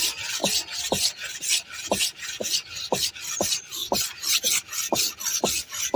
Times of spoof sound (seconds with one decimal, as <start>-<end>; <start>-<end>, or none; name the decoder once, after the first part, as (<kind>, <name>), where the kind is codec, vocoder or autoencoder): none